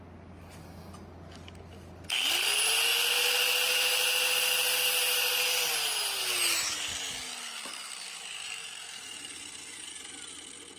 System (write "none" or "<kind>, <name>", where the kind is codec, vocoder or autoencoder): none